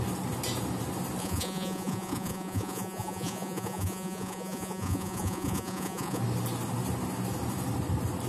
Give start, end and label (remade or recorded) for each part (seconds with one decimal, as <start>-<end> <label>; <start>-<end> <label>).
0.0-1.2 recorded; 1.2-6.2 remade; 6.2-8.3 recorded